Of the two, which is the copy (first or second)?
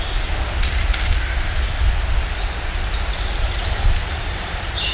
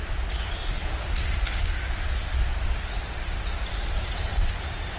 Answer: first